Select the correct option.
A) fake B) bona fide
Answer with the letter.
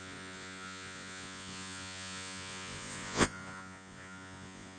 A